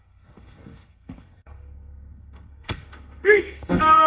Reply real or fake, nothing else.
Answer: fake